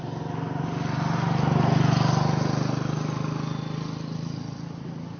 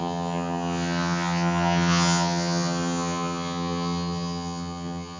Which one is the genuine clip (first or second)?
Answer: first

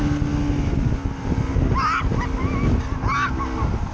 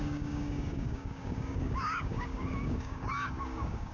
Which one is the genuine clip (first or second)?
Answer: first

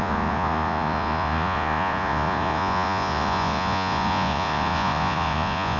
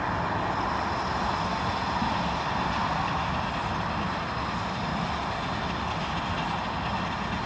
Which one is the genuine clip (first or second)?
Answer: second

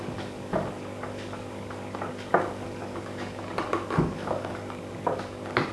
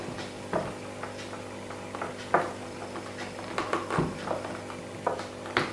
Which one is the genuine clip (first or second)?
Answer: second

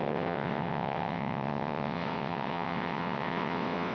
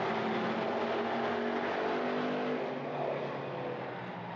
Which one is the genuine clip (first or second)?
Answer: second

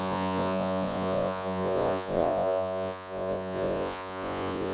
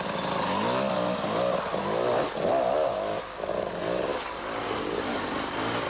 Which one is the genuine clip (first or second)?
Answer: second